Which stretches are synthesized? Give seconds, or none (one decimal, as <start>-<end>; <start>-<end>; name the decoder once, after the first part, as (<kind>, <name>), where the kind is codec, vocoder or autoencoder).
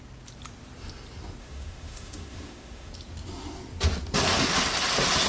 1.4-2.9 (autoencoder, DAC-VAE)